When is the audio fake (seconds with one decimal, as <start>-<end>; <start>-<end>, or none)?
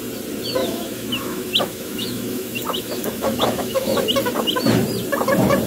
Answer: 0.6-4.0